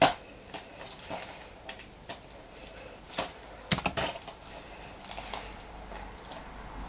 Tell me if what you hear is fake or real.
real